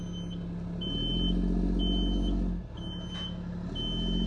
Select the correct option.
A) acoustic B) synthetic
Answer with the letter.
A